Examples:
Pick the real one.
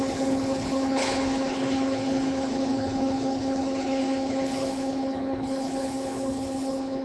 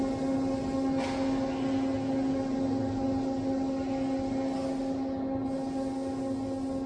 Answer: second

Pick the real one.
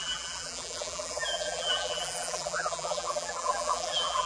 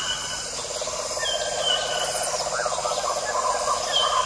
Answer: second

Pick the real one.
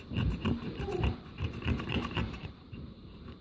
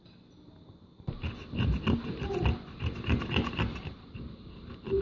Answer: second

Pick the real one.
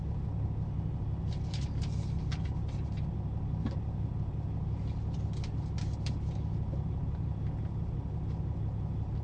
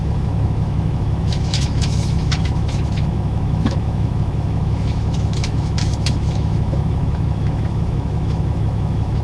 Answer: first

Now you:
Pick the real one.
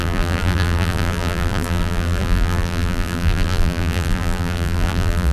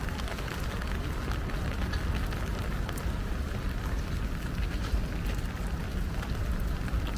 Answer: second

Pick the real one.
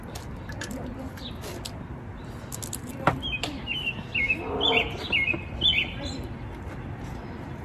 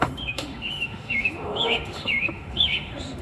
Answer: first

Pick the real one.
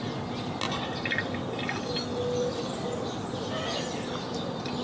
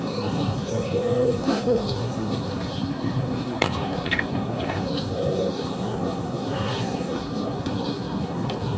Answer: first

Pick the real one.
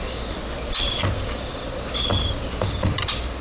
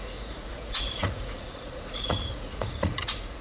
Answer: first